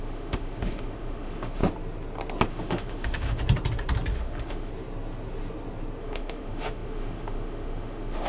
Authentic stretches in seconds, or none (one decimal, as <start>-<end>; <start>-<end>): 1.6-2.5; 3.4-4.1; 4.7-6.0